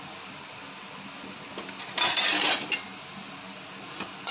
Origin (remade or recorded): recorded